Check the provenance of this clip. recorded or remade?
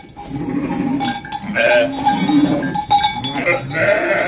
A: recorded